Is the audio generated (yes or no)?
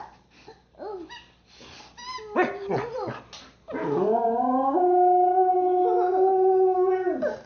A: no